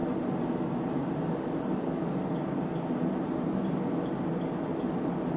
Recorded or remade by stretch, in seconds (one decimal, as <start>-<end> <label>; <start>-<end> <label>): 0.0-5.4 recorded